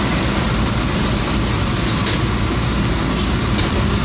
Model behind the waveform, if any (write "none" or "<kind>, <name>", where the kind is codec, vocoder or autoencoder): none